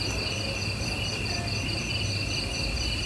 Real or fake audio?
real